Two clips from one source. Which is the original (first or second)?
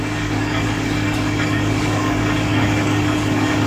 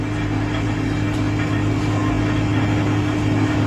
second